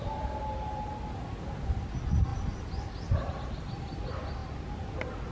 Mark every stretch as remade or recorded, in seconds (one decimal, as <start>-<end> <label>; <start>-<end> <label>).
0.0-5.3 recorded

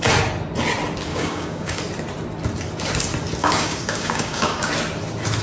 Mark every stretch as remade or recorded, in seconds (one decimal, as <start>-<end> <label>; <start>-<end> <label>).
0.0-1.1 recorded; 1.1-1.8 remade; 1.8-3.4 recorded; 3.4-4.7 remade; 4.7-5.4 recorded

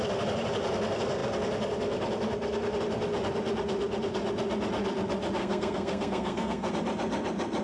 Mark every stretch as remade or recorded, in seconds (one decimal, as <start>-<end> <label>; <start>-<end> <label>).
0.0-5.4 recorded; 5.4-6.7 remade; 6.7-7.6 recorded

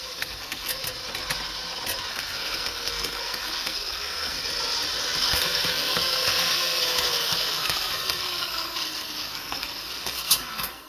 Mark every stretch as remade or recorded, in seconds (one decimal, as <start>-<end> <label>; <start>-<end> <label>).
0.0-0.8 remade; 0.8-2.1 recorded; 2.1-4.4 remade; 4.4-5.2 recorded; 5.2-10.9 remade

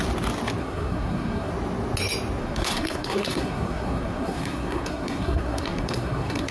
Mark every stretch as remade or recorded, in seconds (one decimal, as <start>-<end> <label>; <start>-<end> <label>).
0.0-0.6 recorded; 0.6-1.5 remade; 1.5-2.4 recorded; 2.4-6.5 remade

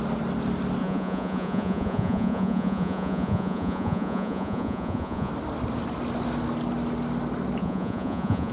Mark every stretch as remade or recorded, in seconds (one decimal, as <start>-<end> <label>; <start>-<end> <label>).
0.0-0.8 recorded; 0.8-5.3 remade; 5.3-7.6 recorded; 7.6-8.5 remade